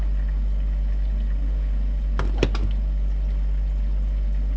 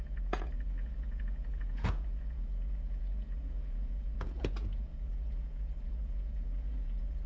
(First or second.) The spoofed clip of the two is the second